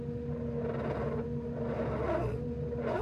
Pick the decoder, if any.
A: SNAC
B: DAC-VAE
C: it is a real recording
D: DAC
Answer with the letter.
C